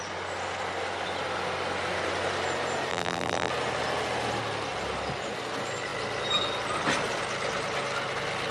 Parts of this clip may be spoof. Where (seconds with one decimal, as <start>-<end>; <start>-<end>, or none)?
2.9-3.5